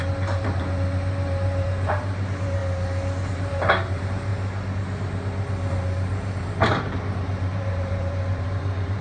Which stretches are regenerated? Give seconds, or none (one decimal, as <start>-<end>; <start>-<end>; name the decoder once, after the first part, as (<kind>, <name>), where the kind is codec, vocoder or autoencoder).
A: 0.0-2.6 (vocoder, BigVGAN v2); 3.3-4.3; 6.4-9.0